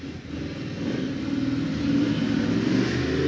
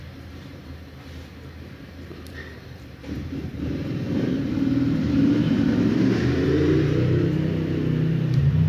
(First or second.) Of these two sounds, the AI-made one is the second